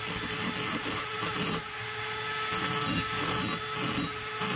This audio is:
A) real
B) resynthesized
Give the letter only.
A